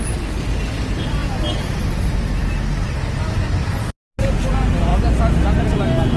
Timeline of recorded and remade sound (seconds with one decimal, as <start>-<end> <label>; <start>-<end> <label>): 0.0-6.2 recorded